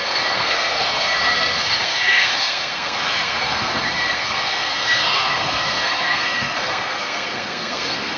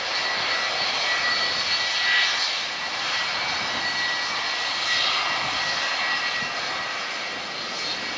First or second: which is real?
second